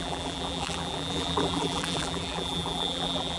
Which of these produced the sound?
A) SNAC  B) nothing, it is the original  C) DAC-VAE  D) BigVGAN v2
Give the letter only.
D